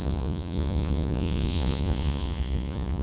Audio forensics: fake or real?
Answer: fake